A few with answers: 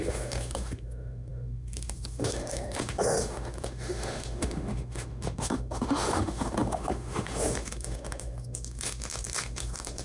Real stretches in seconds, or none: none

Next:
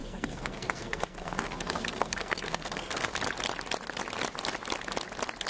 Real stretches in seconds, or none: 3.1-5.5

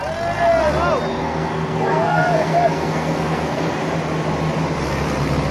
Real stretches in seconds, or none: 0.0-1.1; 3.8-5.5

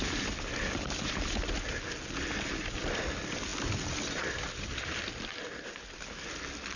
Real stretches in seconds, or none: 0.0-6.8

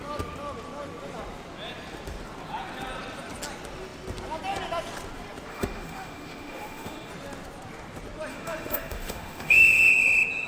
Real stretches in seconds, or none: 0.0-5.5; 7.1-8.3; 9.9-10.5

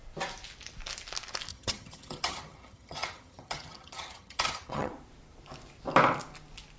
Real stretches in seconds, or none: 0.0-1.5; 4.9-6.8

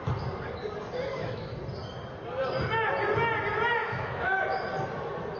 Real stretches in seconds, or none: 0.0-1.1; 1.6-3.8; 4.4-5.4

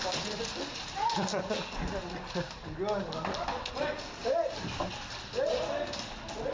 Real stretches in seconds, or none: 0.0-4.2; 4.9-6.5